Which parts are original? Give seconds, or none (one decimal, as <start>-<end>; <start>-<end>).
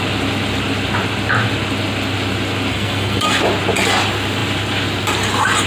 0.0-2.7; 3.4-5.7